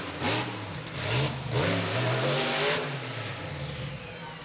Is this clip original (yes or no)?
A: yes